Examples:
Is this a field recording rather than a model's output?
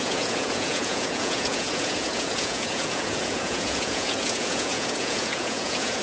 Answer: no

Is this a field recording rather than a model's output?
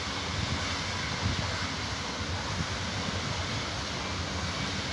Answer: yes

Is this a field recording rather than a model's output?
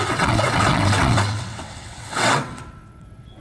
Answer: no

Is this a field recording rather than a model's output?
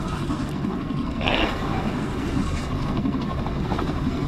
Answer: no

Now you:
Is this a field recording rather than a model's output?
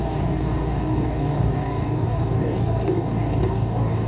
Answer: no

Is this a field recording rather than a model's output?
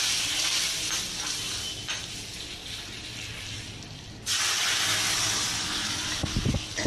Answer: yes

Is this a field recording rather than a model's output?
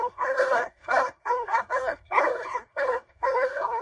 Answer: no